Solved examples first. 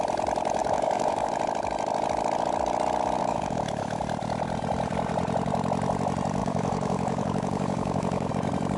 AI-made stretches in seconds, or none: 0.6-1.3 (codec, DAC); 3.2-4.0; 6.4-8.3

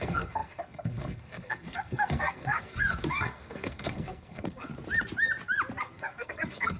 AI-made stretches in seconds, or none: 0.0-4.7 (codec, SNAC); 5.8-6.8

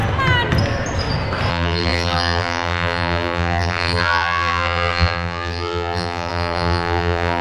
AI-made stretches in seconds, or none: 1.5-7.4 (vocoder, BigVGAN v2)

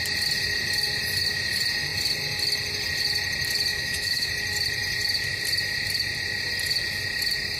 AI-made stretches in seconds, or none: 3.7-4.3 (autoencoder, DAC-VAE)